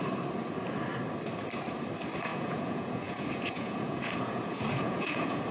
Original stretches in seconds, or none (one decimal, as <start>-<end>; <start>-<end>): 0.0-2.3